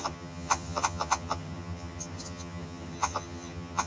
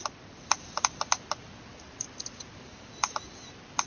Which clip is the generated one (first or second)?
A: first